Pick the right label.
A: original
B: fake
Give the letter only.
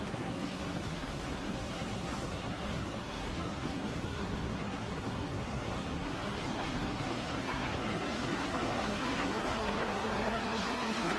B